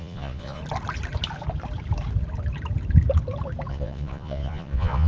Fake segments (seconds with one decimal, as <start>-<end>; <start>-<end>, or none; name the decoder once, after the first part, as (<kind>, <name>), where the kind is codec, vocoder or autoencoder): 0.0-0.6 (vocoder, Vocos); 3.7-5.1